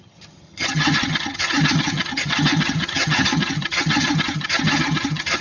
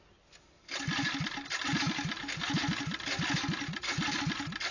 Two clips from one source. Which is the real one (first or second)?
second